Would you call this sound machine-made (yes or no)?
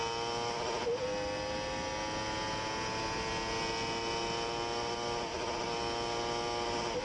no